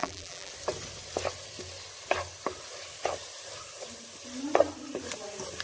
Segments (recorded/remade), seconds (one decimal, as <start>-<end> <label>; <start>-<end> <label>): 0.0-0.5 remade; 0.5-5.6 recorded